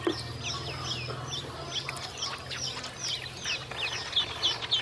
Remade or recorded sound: recorded